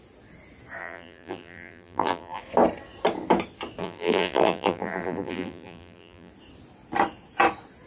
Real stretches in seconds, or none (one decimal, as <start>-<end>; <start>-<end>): 0.0-0.8; 2.4-3.8; 6.3-7.9